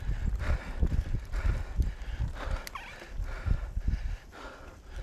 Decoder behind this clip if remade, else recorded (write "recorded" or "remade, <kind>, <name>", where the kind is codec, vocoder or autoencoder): recorded